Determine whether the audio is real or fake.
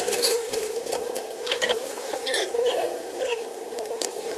fake